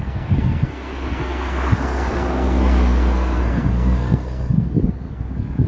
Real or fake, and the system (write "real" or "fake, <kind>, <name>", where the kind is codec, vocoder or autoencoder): fake, codec, SNAC